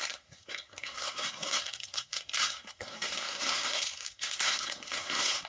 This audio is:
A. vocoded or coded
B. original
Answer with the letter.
A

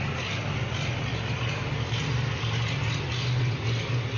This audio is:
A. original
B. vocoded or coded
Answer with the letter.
A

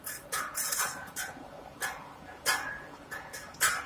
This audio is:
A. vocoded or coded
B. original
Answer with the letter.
A